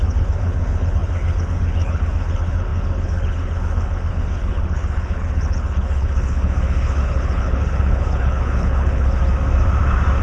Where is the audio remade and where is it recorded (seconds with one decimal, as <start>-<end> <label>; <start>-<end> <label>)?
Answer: 0.0-9.2 remade; 9.2-10.2 recorded